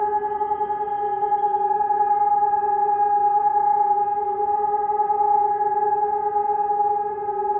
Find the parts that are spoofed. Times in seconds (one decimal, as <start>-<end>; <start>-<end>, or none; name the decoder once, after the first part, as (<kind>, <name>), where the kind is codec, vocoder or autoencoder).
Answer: none